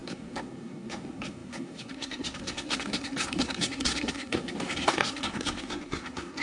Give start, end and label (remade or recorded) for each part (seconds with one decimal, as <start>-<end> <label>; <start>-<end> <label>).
0.0-6.4 remade